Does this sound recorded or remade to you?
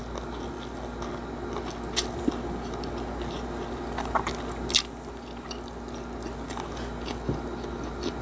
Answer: recorded